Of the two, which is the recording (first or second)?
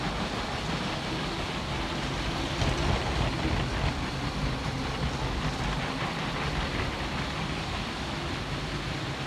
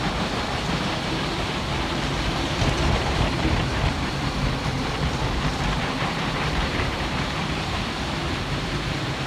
first